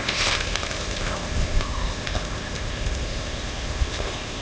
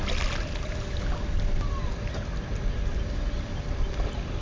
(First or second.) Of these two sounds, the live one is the second